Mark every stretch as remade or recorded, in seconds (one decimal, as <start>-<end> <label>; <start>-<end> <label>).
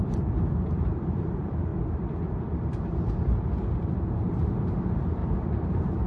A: 0.0-1.7 remade; 1.7-3.8 recorded; 3.8-6.1 remade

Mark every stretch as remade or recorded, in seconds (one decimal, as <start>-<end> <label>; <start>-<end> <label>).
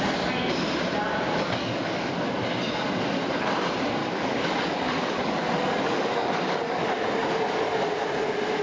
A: 0.0-1.6 recorded; 1.6-2.1 remade; 2.1-4.0 recorded; 4.0-7.0 remade; 7.0-8.6 recorded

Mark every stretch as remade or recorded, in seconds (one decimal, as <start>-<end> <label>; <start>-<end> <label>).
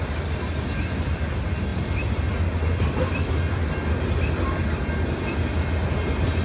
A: 0.0-6.4 recorded